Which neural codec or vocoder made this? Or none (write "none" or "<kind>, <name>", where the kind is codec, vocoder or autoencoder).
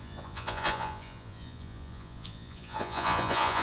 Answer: vocoder, Vocos